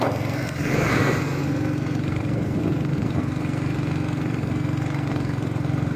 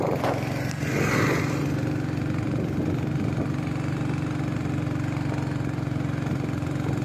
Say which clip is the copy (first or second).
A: first